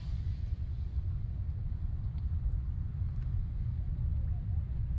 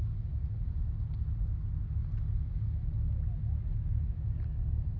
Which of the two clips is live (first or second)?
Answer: second